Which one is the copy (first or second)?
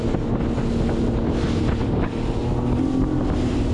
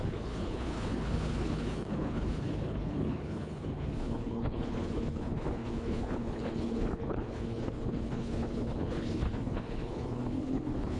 second